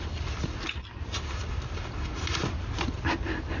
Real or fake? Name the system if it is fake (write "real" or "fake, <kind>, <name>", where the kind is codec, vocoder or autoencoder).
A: real